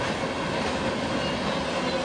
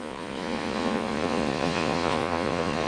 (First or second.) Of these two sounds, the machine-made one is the second